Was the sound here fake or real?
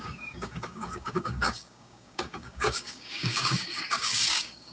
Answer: fake